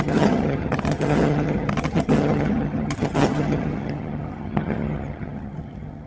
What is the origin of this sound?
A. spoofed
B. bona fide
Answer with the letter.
A